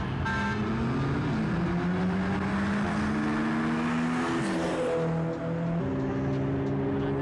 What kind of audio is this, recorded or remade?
recorded